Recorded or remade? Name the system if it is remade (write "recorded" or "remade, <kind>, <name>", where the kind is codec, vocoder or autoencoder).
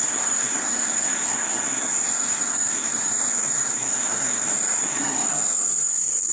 remade, codec, SNAC